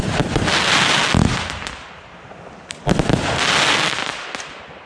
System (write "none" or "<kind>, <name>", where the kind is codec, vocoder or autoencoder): none